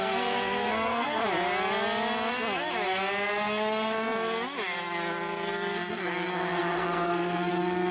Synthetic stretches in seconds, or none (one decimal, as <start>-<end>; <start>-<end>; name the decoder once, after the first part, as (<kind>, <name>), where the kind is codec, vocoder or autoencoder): 0.0-1.2 (codec, SNAC); 5.9-7.9